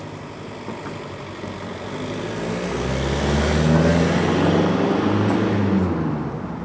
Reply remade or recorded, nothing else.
recorded